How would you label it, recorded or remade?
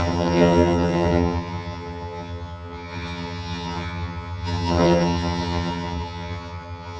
remade